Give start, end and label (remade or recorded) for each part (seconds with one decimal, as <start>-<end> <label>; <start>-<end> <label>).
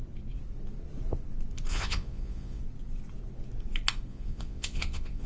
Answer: 0.0-1.7 recorded; 1.7-2.6 remade; 2.6-4.1 recorded; 4.1-5.3 remade